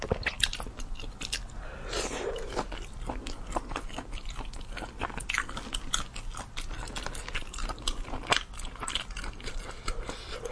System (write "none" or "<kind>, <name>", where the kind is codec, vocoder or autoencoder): none